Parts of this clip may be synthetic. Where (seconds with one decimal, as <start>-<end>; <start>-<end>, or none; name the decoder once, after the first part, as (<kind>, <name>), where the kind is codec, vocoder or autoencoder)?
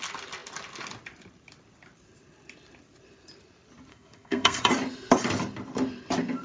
3.9-4.6 (codec, SNAC)